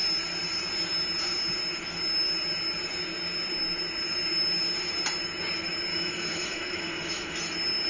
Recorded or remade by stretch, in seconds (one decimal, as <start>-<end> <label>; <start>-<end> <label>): 0.0-5.9 recorded; 5.9-7.4 remade; 7.4-7.9 recorded